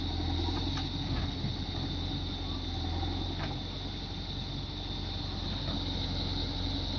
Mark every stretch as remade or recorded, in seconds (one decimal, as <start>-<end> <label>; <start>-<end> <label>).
0.0-7.0 recorded